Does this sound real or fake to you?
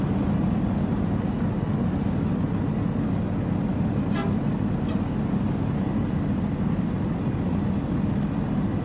real